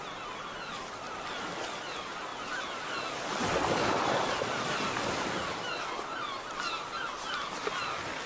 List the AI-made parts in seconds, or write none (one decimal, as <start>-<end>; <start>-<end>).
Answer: 0.7-1.3; 2.3-5.8